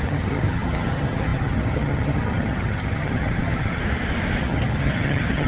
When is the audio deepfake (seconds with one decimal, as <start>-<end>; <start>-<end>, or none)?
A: 0.0-3.8; 4.4-5.5